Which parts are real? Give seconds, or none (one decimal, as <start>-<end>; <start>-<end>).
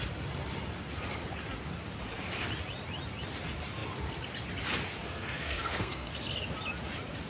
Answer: 0.0-5.0; 6.1-7.3